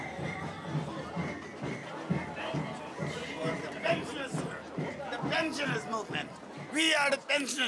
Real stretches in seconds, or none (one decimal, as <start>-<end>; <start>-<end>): 0.0-7.7